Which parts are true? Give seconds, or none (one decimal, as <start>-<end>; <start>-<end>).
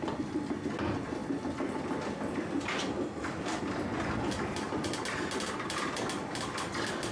1.2-5.5